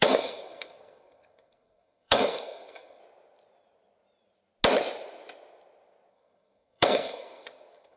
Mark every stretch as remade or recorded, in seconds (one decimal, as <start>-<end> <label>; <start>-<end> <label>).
0.0-3.0 remade; 3.0-6.1 recorded; 6.1-8.0 remade